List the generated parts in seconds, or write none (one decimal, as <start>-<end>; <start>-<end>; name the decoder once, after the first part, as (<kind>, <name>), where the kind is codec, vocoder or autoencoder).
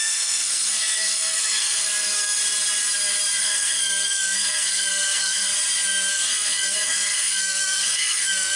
0.0-2.4 (codec, SNAC); 3.4-5.5; 6.1-8.6